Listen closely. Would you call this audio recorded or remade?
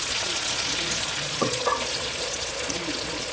remade